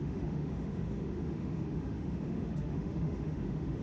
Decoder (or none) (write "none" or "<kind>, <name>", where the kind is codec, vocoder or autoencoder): autoencoder, DAC-VAE